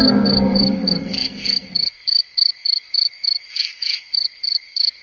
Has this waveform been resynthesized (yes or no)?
yes